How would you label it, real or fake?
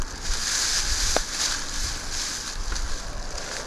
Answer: real